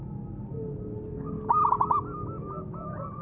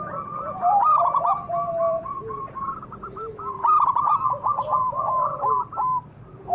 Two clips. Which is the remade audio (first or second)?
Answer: second